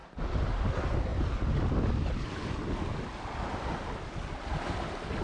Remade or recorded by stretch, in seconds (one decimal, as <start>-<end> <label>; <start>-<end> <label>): 0.0-5.2 recorded